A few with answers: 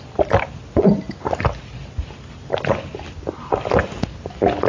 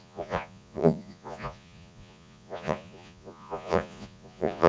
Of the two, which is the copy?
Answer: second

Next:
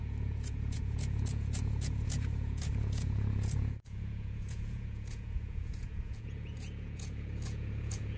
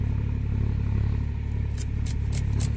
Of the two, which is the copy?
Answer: first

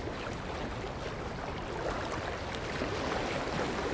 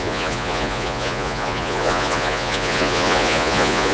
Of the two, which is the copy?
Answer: second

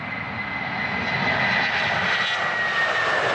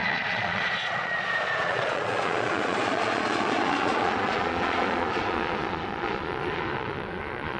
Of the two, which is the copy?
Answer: second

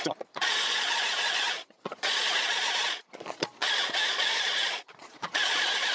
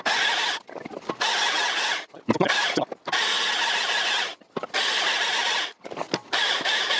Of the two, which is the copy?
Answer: first